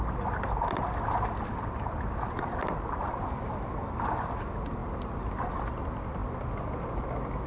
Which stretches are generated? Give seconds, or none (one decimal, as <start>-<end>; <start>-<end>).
none

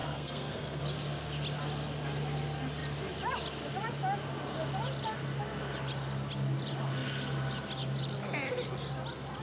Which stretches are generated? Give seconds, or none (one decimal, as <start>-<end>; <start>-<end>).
0.0-0.8

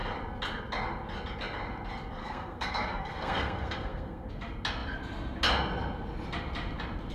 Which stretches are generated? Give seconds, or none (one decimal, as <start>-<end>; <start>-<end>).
2.2-4.3

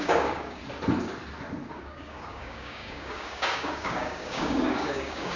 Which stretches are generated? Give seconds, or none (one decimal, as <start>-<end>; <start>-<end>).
0.0-0.6; 1.7-5.4

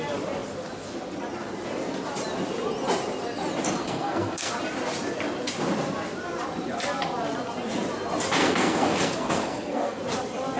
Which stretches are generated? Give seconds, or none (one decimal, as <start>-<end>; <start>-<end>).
3.8-4.5; 8.4-10.0

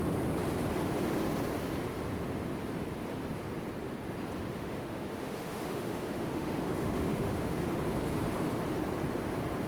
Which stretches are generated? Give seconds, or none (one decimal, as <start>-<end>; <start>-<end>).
4.4-7.8

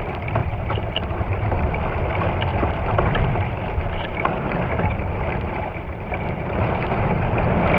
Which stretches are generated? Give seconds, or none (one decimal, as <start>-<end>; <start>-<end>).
0.4-1.7; 2.5-7.2

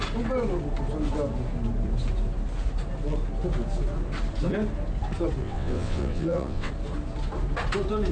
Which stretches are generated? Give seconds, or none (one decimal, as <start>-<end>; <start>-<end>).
5.4-6.7